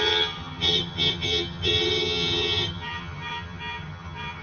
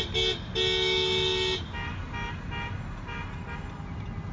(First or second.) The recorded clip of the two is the second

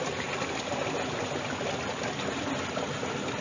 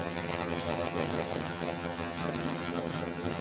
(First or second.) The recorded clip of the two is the first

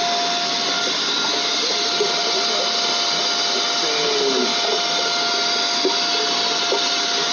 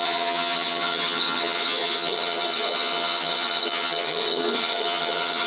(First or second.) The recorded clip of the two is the first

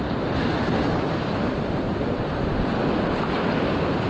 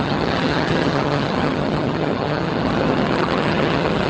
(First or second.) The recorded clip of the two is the first